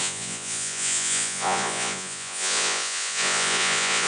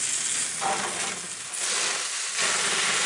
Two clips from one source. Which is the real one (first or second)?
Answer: second